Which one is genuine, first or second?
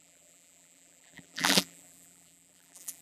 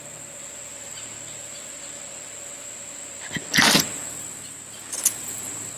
second